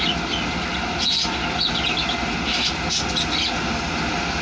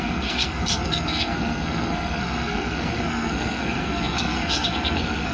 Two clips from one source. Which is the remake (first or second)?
second